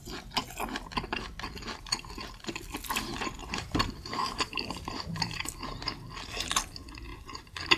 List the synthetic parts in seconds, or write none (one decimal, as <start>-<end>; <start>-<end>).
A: 3.4-5.5; 7.1-7.8